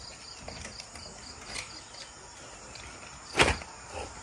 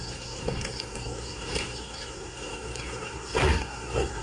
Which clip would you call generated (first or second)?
second